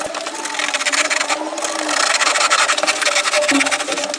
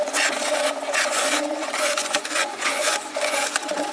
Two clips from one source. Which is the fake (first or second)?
second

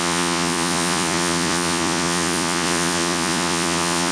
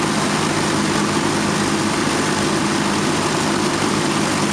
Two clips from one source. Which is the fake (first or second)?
first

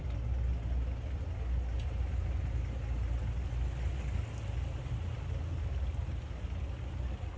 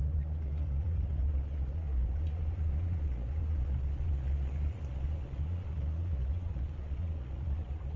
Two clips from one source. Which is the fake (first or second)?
second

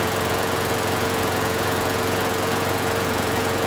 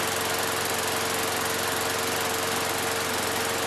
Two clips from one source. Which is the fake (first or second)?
first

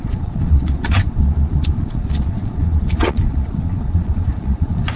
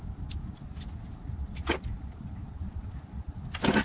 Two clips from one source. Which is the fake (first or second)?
first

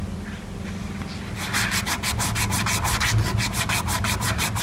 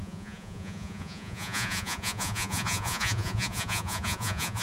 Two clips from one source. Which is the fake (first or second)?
second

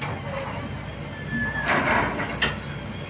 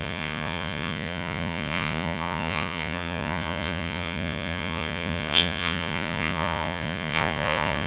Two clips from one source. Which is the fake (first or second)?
second